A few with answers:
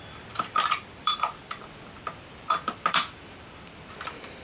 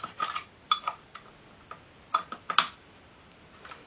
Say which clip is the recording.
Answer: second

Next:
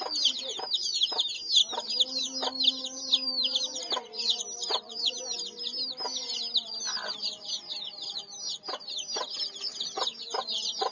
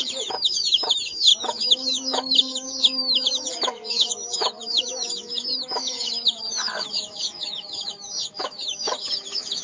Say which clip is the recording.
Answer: first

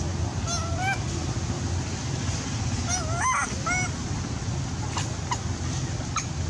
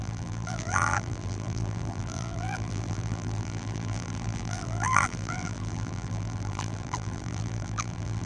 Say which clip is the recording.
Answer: first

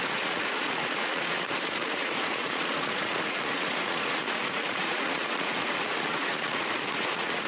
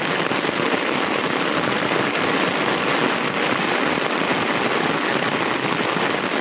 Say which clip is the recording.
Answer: second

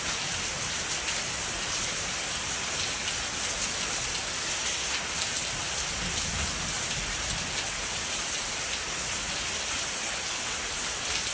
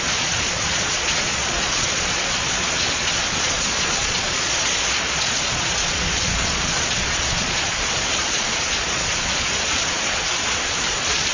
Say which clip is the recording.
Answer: first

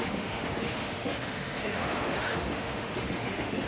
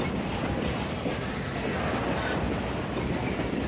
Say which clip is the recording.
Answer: second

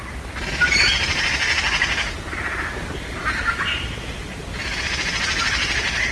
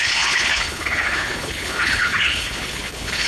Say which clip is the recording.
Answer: first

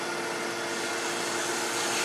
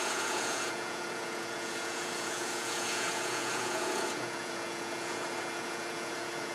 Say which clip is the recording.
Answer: first